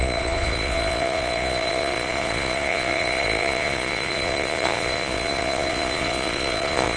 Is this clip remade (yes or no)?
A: yes